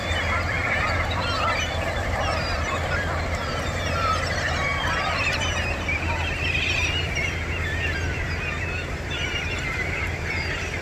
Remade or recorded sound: remade